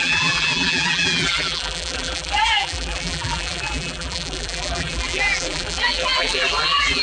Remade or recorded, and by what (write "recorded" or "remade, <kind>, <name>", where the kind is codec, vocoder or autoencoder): remade, vocoder, BigVGAN v2